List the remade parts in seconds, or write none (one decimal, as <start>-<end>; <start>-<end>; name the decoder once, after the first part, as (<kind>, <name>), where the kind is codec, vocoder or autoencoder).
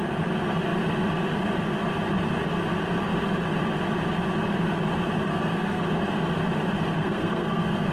5.3-5.8 (codec, SNAC); 7.0-7.9